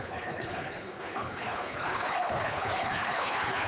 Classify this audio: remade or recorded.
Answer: remade